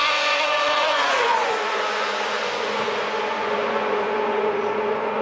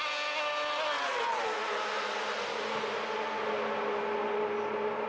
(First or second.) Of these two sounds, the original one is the second